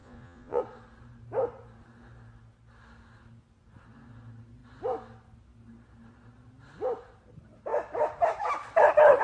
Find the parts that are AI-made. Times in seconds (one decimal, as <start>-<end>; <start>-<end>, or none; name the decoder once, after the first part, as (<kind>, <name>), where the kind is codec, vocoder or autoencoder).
0.0-0.6 (vocoder, Vocos)